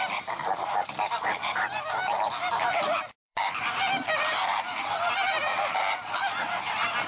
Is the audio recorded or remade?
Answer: remade